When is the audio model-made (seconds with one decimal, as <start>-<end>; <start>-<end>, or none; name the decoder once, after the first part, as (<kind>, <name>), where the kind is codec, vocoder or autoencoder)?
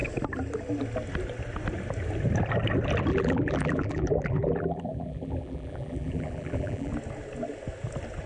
3.1-6.9 (vocoder, BigVGAN v2)